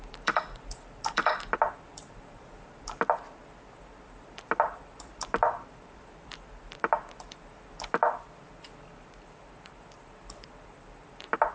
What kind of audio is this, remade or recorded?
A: remade